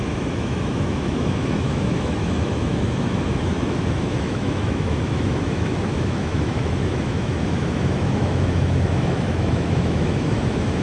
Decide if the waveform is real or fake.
fake